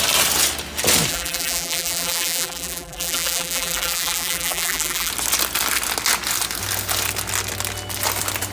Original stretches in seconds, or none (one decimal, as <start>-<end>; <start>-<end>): 0.0-1.1; 5.1-8.5